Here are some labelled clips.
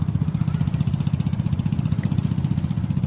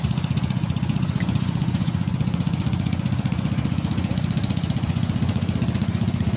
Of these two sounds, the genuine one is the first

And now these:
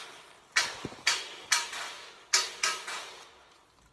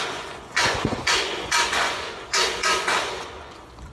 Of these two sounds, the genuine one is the first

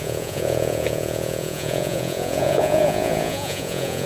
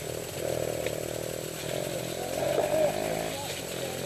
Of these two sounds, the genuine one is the second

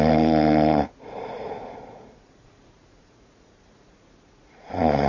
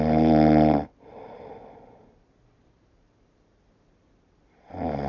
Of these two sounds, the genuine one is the second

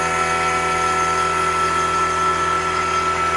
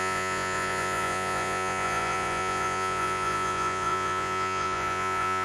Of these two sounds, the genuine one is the first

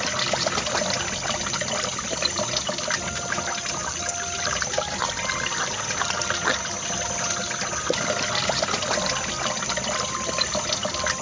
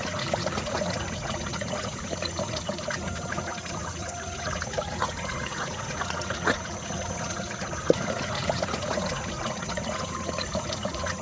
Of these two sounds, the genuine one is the first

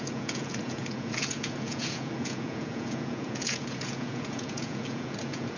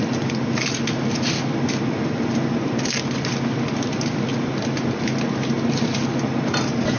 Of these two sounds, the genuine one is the second